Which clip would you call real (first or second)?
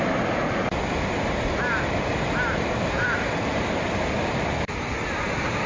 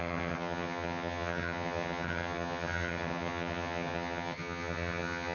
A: first